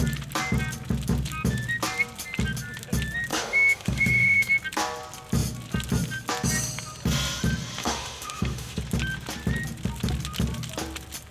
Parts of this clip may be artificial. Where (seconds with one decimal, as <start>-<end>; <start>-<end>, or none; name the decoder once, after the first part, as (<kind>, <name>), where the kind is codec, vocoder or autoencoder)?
3.3-4.5 (autoencoder, DAC-VAE); 7.8-8.8